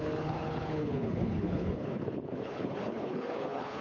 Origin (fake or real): fake